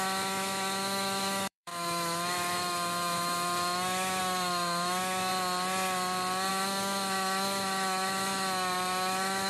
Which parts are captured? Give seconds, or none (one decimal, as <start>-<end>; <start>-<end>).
5.3-6.5